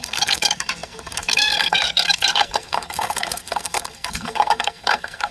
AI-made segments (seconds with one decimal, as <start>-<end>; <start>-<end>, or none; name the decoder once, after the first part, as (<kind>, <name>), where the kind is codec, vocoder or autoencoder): 0.0-5.3 (codec, SNAC)